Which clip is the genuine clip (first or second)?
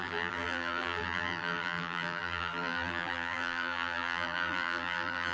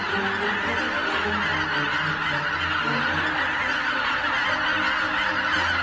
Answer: second